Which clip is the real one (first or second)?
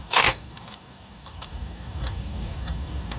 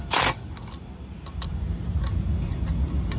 second